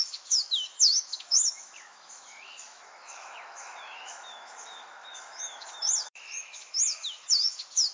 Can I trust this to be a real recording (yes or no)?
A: no